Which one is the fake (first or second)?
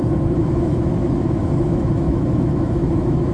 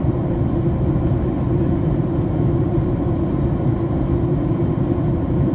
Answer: first